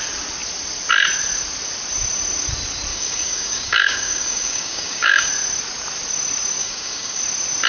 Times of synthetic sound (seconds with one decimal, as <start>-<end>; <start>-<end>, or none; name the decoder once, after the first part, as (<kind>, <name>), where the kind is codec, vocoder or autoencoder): 2.9-5.3 (codec, DAC); 6.6-7.2

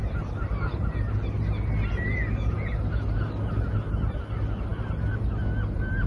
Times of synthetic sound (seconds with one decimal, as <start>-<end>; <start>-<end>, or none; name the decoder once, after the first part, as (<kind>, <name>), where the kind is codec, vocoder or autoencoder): none

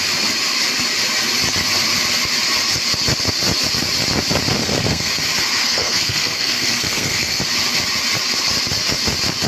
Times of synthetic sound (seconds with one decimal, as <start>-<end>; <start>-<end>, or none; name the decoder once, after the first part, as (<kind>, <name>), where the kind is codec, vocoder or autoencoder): 4.6-5.1 (codec, SNAC); 5.6-7.4

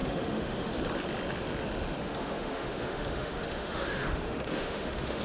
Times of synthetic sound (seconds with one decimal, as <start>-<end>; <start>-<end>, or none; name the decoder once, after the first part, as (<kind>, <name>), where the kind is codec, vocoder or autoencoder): 0.0-0.7 (autoencoder, DAC-VAE); 2.0-5.2

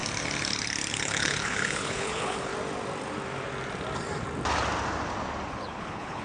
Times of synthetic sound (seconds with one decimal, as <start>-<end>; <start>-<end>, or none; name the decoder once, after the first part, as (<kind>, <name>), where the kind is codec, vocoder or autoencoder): 0.9-2.5 (codec, HILCodec); 5.5-6.2

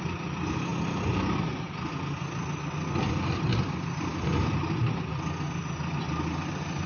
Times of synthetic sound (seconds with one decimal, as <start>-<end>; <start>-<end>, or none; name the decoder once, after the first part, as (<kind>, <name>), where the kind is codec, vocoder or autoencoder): none